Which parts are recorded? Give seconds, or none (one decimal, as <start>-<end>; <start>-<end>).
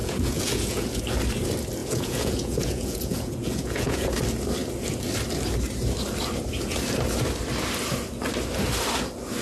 1.0-1.8; 4.1-9.4